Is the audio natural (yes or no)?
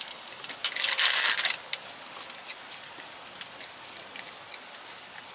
yes